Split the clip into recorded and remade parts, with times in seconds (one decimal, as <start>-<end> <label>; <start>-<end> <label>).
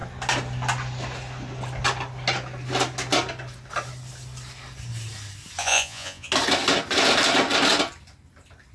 0.0-5.6 recorded; 5.6-6.3 remade; 6.3-8.7 recorded